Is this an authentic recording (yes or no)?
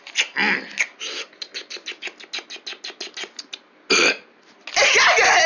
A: yes